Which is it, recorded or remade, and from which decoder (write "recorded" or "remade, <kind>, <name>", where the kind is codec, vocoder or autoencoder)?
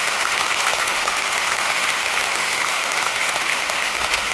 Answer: remade, autoencoder, DAC-VAE